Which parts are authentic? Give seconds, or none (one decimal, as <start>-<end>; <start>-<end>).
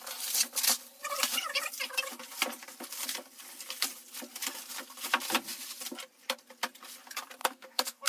0.0-7.4